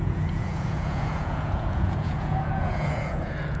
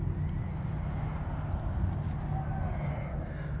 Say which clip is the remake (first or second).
first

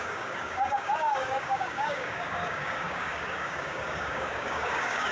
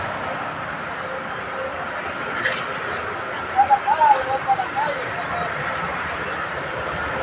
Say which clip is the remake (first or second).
first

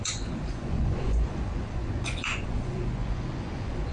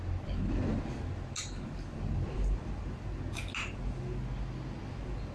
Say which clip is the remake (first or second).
first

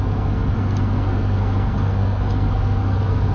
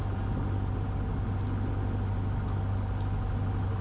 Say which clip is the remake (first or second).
first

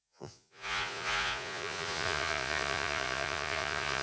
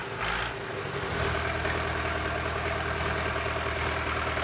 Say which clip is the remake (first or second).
first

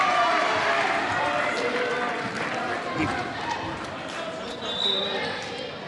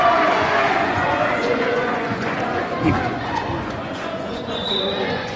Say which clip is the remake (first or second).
second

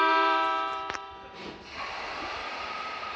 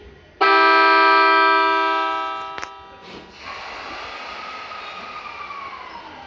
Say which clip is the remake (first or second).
first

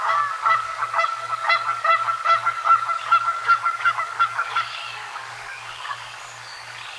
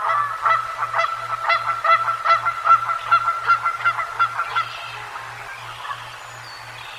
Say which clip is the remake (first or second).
first